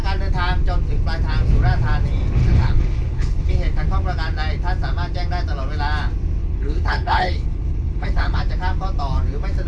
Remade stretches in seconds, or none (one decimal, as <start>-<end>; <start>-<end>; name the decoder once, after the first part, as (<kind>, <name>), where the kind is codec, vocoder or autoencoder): 2.4-3.5 (codec, HILCodec); 6.4-8.4